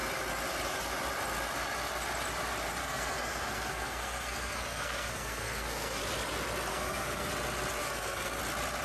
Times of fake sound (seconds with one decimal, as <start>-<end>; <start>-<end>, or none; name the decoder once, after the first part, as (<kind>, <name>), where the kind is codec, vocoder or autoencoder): 2.8-6.0 (codec, SNAC); 6.7-7.3; 7.8-8.4